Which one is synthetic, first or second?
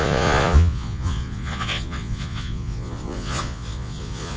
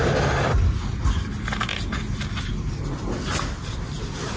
first